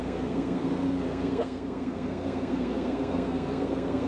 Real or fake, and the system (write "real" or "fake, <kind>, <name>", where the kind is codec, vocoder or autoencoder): fake, codec, SNAC